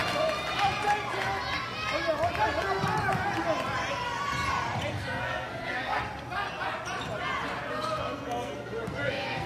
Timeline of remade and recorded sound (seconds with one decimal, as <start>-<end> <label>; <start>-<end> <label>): 0.0-4.9 recorded; 4.9-6.0 remade; 6.0-7.7 recorded; 7.7-9.5 remade